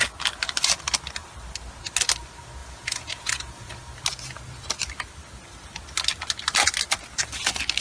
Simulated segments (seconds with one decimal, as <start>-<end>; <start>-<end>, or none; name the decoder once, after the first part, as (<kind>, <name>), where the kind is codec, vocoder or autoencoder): 2.6-3.7 (vocoder, Vocos)